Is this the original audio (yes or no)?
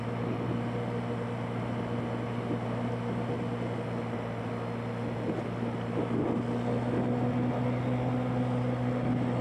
yes